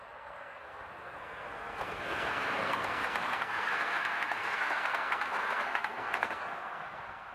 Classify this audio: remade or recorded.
remade